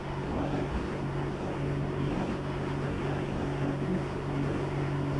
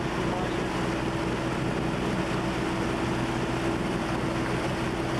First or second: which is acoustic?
second